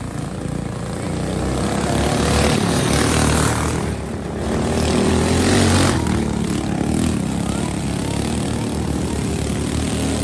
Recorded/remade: recorded